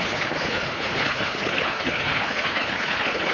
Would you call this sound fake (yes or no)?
yes